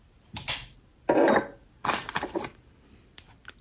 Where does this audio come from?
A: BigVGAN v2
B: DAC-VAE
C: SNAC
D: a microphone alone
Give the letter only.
A